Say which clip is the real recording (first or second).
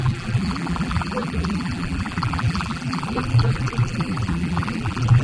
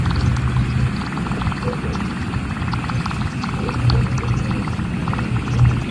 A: second